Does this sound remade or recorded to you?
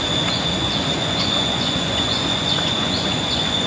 remade